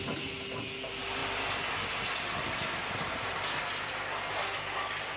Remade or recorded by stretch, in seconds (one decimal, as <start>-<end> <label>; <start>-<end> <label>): 0.0-5.2 recorded